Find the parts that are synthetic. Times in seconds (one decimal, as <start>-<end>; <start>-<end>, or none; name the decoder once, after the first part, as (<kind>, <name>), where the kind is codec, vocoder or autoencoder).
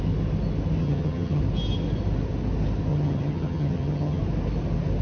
0.8-1.4 (vocoder, HiFi-GAN); 2.9-4.2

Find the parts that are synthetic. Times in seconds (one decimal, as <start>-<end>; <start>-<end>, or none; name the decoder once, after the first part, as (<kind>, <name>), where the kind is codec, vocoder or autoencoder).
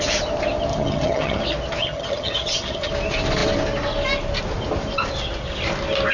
0.7-1.4 (vocoder, HiFi-GAN); 1.8-2.9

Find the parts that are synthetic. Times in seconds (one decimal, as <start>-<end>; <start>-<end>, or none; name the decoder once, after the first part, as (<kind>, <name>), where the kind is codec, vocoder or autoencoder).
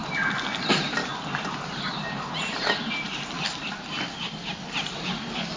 none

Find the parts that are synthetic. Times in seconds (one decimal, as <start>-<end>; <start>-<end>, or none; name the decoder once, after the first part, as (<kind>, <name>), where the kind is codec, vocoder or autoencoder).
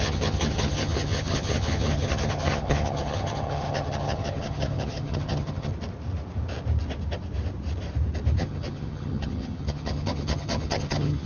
0.0-5.7 (vocoder, HiFi-GAN); 8.4-11.3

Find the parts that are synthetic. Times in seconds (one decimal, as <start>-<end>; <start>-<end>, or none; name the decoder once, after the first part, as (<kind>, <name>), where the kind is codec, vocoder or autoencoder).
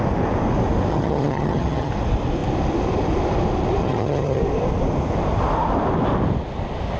0.9-1.9 (vocoder, HiFi-GAN); 3.8-4.4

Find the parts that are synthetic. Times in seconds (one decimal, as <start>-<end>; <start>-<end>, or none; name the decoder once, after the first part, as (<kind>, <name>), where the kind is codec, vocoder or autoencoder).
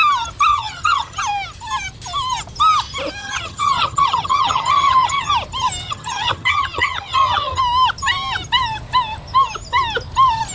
0.5-1.2 (vocoder, HiFi-GAN); 3.2-5.3; 5.8-7.6